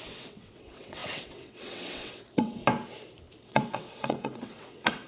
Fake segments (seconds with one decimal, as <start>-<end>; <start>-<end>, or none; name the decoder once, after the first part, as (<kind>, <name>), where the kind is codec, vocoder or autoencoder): 0.0-2.6 (vocoder, WaveNeXt); 3.4-5.1